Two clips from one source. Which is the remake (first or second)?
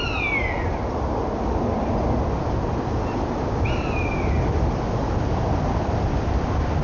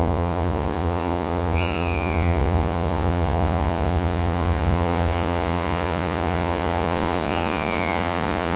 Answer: second